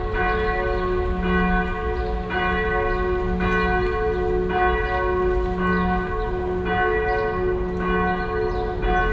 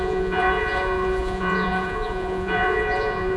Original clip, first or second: first